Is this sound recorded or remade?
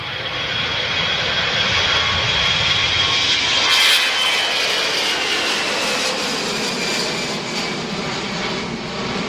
remade